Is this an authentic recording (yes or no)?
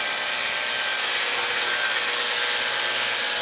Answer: yes